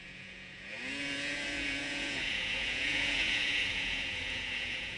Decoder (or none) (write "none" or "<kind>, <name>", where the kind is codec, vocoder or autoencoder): vocoder, Vocos